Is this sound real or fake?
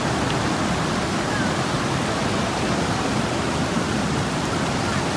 real